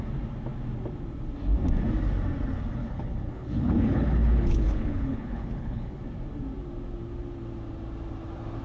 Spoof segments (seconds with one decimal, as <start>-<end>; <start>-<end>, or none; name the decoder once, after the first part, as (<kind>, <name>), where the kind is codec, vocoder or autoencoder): 2.8-6.0 (codec, HILCodec)